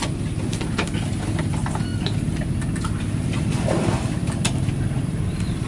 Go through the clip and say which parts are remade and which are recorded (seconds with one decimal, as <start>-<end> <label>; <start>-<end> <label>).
0.0-5.7 recorded